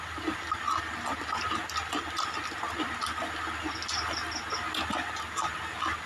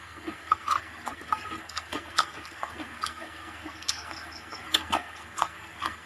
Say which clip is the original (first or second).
first